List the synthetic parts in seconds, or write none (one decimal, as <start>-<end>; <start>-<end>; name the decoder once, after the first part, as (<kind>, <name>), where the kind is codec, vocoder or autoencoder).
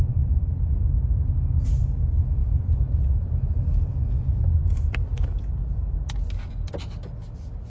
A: none